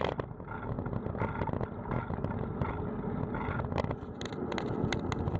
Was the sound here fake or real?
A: real